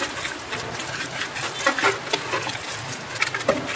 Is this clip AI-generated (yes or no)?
no